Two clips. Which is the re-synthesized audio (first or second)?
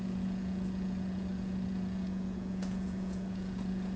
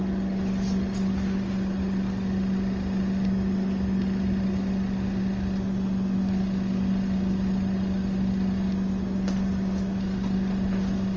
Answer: first